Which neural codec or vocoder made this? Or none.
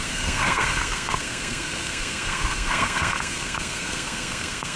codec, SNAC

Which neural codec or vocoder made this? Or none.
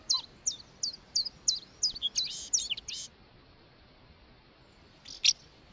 none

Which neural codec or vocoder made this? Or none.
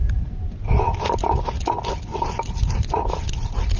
none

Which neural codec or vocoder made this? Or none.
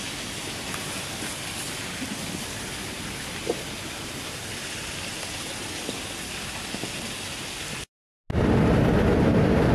none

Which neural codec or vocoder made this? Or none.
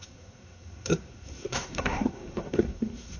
codec, SNAC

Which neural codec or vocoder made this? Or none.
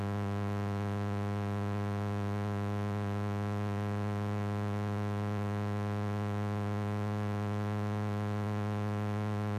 none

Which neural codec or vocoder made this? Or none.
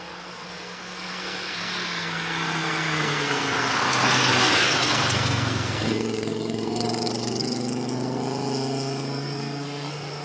codec, SNAC